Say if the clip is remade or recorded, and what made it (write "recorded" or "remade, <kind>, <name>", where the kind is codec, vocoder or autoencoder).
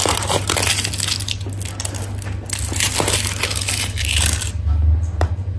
recorded